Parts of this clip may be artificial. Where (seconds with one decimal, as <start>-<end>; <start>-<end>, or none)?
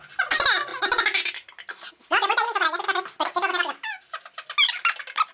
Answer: none